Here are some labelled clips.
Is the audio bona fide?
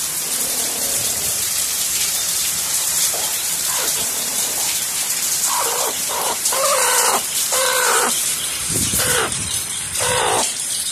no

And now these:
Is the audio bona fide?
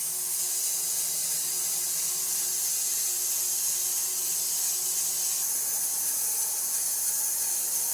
yes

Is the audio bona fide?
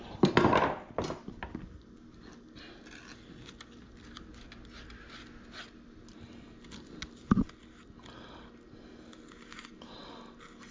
yes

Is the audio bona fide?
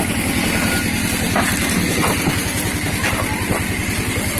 yes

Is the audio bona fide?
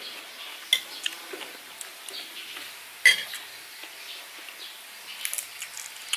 yes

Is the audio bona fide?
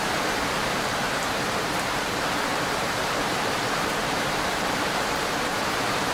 no